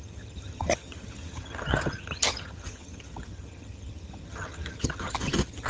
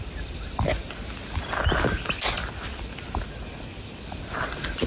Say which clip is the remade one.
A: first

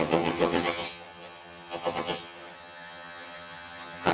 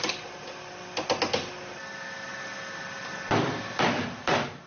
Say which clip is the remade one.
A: first